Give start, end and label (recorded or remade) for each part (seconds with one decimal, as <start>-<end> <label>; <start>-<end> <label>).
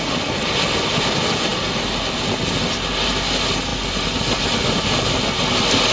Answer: 0.0-5.9 recorded